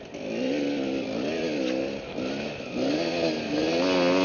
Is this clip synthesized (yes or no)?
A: no